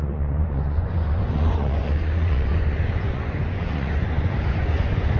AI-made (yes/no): yes